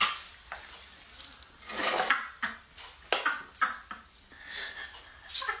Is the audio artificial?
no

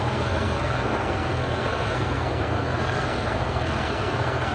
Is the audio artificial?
yes